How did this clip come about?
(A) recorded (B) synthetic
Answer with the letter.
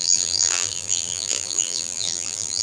B